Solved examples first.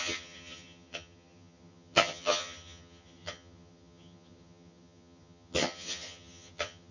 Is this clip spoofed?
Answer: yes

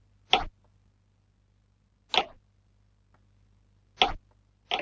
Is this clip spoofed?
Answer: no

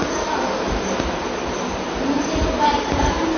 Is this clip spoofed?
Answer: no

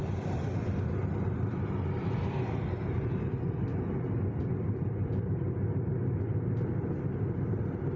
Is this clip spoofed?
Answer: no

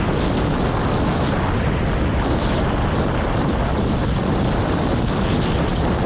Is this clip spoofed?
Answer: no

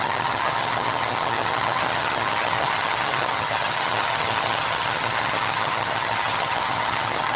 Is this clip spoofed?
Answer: yes